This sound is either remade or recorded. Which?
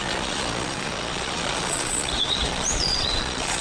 remade